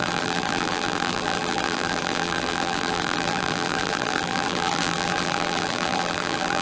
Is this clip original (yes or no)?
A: no